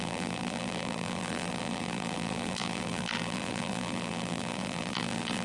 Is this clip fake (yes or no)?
yes